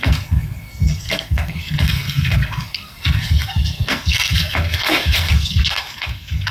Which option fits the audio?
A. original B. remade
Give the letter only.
B